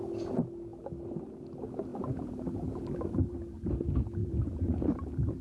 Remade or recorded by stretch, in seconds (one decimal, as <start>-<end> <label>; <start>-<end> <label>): 0.0-1.9 recorded; 1.9-3.7 remade; 3.7-4.2 recorded; 4.2-5.4 remade